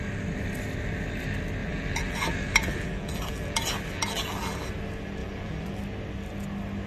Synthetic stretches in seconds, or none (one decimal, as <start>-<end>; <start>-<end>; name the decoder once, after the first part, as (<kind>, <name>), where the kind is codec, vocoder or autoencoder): 1.6-4.7 (vocoder, BigVGAN v2); 5.2-5.8